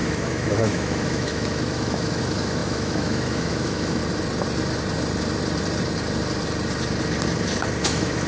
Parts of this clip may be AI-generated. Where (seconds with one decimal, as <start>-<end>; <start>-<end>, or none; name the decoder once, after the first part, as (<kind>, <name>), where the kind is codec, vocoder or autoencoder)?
0.0-4.0 (autoencoder, DAC-VAE); 7.8-8.3